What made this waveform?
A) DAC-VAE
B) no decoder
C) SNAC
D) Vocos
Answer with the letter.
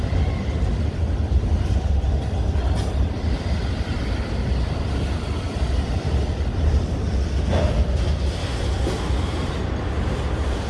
B